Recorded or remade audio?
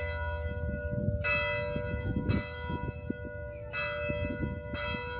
recorded